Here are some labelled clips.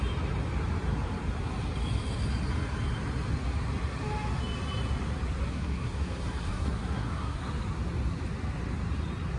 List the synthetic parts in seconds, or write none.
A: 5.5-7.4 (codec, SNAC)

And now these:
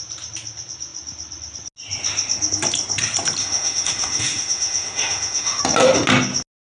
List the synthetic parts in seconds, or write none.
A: 3.4-5.6 (autoencoder, DAC-VAE)